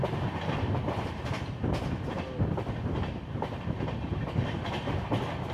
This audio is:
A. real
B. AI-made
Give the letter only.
B